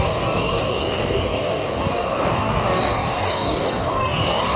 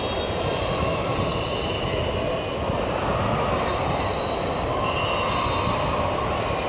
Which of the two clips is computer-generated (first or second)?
first